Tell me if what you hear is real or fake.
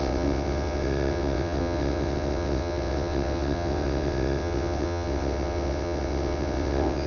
fake